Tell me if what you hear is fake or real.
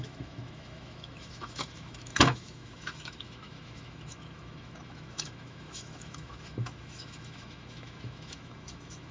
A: fake